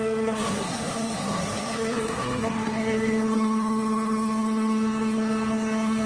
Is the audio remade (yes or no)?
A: yes